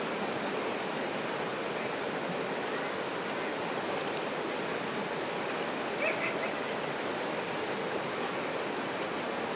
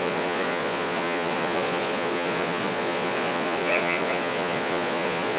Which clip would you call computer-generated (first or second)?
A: second